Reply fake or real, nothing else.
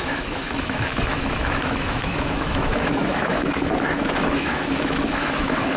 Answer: fake